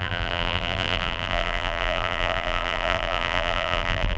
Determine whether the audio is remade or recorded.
remade